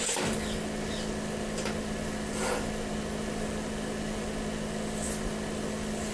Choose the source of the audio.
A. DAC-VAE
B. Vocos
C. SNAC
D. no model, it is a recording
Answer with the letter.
D